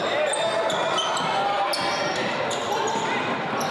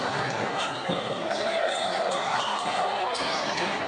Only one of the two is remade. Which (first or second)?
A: second